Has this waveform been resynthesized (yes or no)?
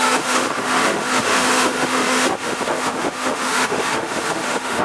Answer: yes